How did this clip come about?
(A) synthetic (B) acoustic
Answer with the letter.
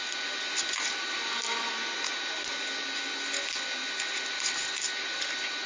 B